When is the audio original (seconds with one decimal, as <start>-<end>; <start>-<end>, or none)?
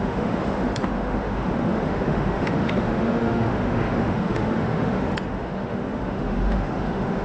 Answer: none